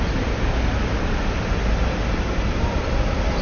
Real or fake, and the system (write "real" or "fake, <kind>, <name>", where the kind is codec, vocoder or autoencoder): real